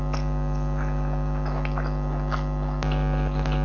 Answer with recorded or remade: recorded